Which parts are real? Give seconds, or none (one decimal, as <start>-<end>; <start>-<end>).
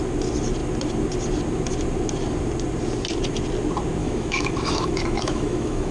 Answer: 0.0-4.0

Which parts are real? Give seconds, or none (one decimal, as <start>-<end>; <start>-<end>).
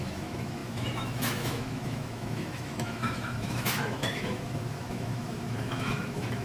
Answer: none